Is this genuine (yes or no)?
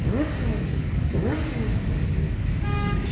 no